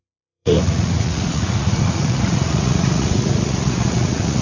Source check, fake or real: fake